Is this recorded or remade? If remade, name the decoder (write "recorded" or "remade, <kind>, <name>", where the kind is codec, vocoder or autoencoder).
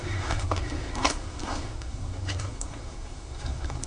remade, codec, SNAC